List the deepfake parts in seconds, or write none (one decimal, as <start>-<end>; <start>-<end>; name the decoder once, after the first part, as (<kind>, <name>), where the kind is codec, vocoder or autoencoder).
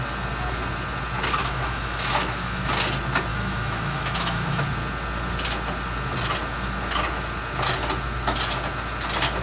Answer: 1.4-2.7 (autoencoder, DAC-VAE); 3.3-4.6